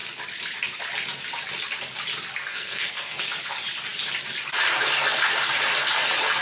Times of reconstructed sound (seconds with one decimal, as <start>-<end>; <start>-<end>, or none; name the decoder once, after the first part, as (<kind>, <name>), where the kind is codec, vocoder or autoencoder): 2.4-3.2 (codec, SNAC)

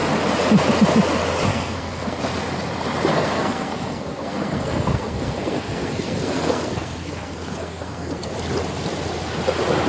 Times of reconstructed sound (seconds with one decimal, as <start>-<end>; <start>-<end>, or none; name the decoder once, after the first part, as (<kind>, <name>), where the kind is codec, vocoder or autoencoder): 1.5-2.2 (codec, SNAC); 3.1-8.3

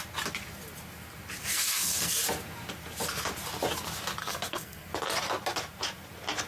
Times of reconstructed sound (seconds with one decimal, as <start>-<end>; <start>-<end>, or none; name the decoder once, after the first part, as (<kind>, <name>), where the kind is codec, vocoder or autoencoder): 1.4-2.2 (codec, SNAC); 4.2-4.9

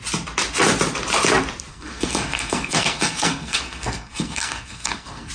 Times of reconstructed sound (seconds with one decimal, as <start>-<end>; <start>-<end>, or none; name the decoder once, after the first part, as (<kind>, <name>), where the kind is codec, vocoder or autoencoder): 1.7-5.3 (codec, SNAC)

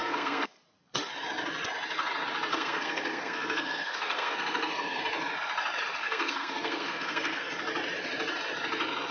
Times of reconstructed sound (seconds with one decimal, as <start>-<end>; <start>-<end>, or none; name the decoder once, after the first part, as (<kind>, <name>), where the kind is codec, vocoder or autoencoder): 0.0-0.6 (codec, SNAC); 2.5-5.0; 6.0-7.5